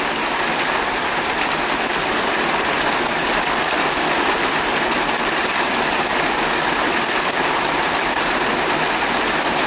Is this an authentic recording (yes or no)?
yes